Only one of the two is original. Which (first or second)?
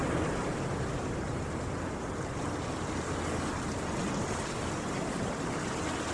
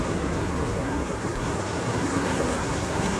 first